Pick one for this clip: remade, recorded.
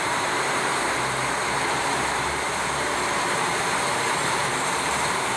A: remade